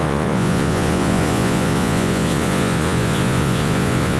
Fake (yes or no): yes